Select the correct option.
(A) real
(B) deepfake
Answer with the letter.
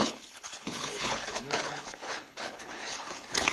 B